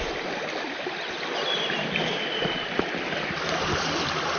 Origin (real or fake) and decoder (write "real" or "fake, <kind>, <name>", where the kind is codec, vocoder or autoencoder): real